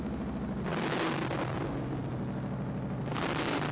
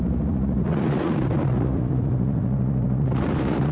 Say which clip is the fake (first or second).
second